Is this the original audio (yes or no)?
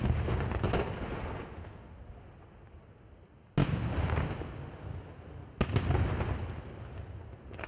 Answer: yes